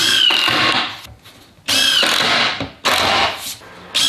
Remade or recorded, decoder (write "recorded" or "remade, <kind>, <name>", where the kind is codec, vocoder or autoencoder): recorded